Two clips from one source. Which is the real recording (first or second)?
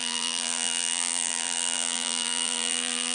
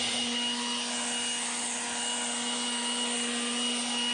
second